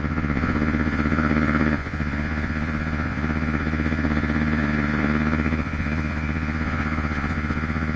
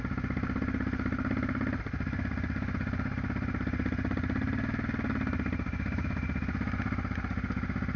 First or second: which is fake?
first